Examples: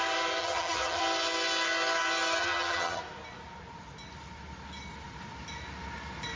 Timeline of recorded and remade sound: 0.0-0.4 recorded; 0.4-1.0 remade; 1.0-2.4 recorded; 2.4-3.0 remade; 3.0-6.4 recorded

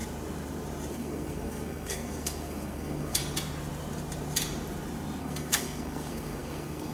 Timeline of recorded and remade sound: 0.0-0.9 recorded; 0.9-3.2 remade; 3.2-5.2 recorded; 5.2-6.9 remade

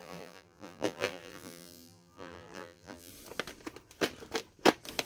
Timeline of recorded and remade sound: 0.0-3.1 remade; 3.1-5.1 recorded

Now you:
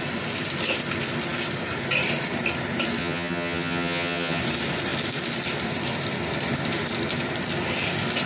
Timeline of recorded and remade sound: 0.0-3.0 recorded; 3.0-4.4 remade; 4.4-8.3 recorded

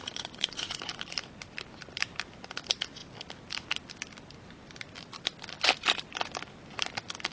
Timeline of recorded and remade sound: 0.0-0.8 remade; 0.8-7.3 recorded